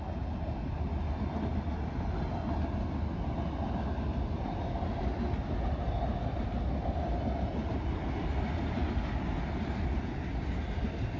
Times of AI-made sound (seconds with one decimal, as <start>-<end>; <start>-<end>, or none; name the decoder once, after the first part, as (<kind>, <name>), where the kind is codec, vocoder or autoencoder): none